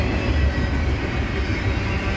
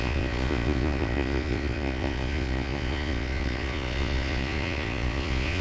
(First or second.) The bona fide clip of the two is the first